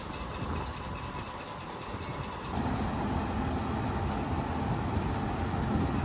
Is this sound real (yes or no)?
yes